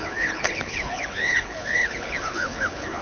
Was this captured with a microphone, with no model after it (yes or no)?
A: no